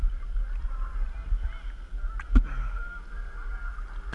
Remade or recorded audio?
recorded